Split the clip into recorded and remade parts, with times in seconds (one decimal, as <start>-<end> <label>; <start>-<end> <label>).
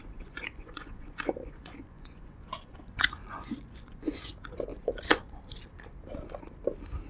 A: 0.0-4.3 remade; 4.3-4.7 recorded; 4.7-5.4 remade; 5.4-7.1 recorded